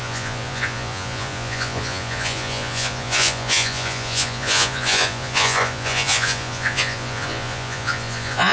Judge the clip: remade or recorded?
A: remade